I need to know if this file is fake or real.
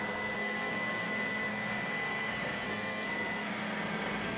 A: fake